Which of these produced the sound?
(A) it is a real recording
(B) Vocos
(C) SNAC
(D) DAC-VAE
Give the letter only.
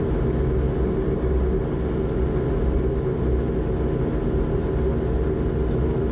A